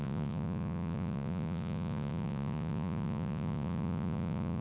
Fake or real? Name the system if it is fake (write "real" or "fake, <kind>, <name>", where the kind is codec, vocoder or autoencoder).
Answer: fake, vocoder, Vocos